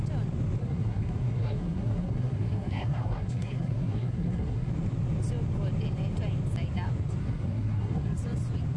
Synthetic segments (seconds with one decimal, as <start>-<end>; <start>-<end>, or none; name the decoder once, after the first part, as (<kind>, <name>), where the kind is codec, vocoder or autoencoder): 0.6-4.7 (codec, SNAC); 7.2-8.2